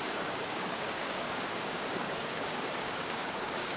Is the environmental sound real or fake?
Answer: fake